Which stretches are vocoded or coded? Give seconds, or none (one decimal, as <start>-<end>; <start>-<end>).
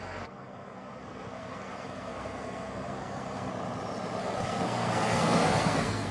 0.0-3.5; 4.2-6.1